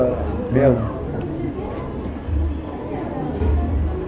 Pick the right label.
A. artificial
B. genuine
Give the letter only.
B